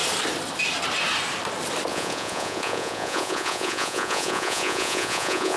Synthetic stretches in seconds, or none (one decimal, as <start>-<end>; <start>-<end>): 1.9-5.6